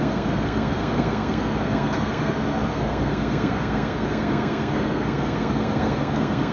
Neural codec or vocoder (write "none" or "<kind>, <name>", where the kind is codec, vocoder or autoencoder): codec, SNAC